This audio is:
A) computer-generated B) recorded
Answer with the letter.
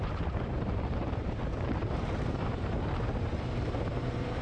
A